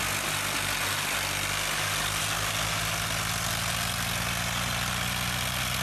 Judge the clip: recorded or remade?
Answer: recorded